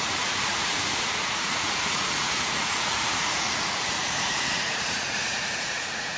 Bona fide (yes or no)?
no